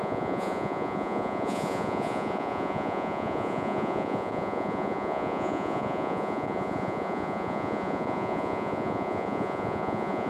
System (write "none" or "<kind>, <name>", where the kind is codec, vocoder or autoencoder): vocoder, Vocos